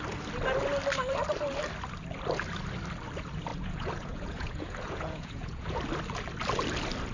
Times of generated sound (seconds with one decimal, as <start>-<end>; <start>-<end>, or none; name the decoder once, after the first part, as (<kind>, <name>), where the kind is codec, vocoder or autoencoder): 3.5-5.8 (vocoder, Vocos)